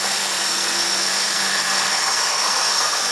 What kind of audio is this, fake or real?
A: fake